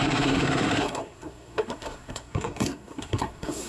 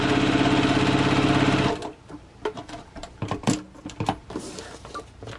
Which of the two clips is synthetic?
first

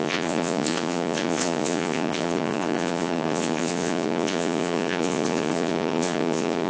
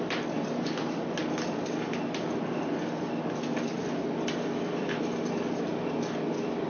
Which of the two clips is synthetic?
first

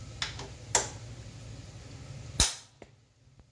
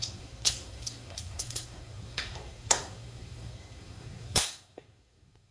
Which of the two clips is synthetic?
second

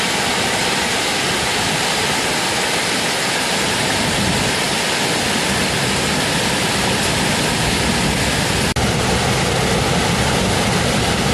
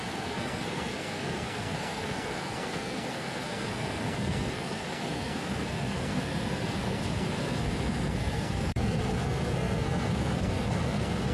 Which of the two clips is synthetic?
second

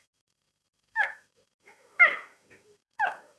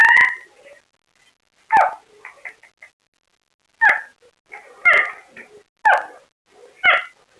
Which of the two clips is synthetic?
first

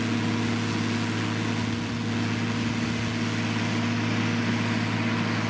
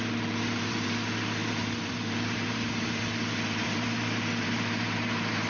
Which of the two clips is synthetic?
second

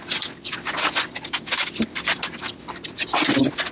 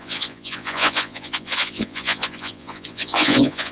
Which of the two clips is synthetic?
second